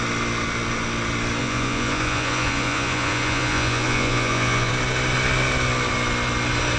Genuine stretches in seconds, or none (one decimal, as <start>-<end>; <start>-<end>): 0.0-1.4; 4.7-6.8